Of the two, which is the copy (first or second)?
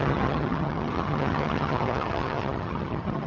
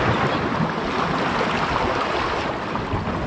first